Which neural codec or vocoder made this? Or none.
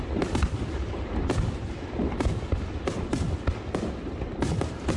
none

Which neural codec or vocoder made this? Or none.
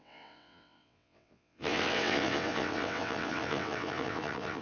vocoder, WaveNeXt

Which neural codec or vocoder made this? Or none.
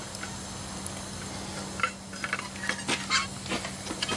none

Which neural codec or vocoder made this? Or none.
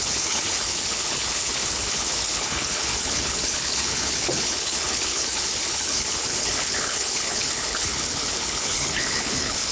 codec, HILCodec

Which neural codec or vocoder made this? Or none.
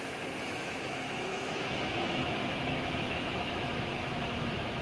autoencoder, DAC-VAE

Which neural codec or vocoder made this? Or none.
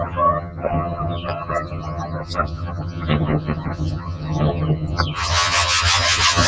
vocoder, HiFi-GAN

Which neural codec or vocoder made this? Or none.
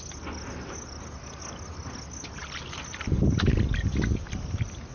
none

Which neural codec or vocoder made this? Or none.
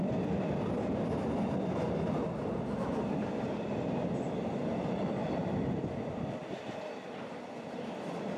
vocoder, BigVGAN v2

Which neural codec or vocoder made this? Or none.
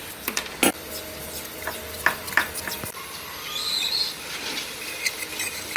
none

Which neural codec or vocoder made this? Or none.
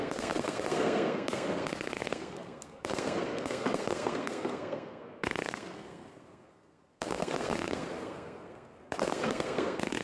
codec, SNAC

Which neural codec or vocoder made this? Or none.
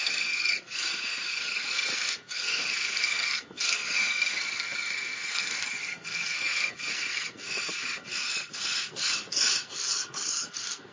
codec, SNAC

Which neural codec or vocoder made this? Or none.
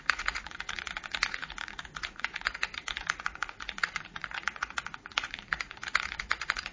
vocoder, Vocos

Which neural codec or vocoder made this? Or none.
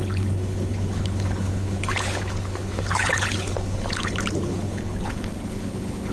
codec, HILCodec